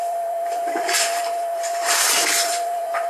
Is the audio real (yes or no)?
no